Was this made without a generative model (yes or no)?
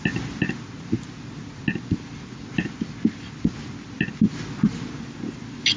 yes